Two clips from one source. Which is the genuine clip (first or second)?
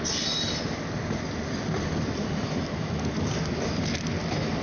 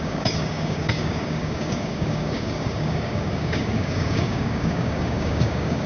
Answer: first